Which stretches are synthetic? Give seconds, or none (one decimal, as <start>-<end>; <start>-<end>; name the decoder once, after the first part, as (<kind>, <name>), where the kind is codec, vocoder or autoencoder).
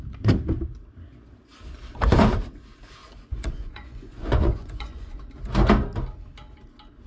3.0-5.2 (vocoder, Vocos)